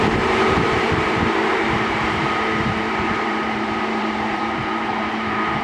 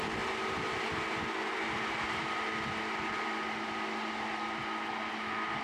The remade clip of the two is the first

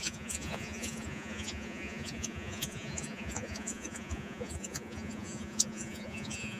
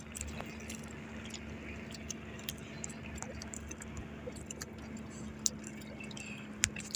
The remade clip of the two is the first